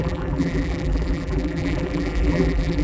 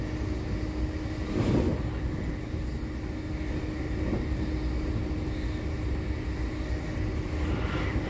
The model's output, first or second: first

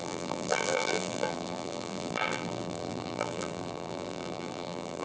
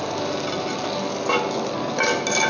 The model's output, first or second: first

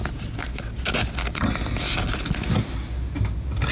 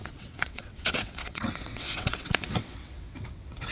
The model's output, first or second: second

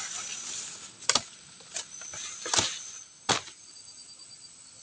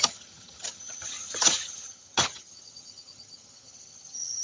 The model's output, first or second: second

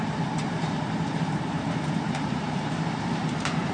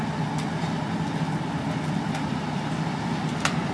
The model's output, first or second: first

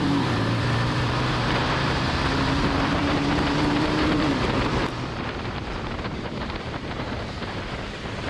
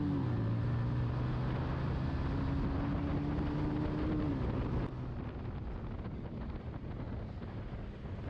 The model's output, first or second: first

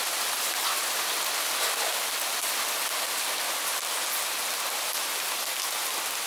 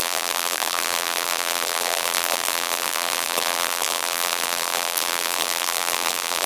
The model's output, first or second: second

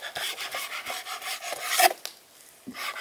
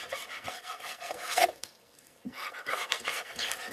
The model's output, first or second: second